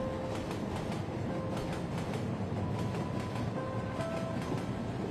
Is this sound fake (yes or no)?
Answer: no